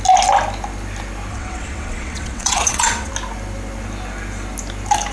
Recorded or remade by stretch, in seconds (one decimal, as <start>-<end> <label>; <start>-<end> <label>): 0.0-1.3 recorded; 1.3-3.1 remade; 3.1-5.1 recorded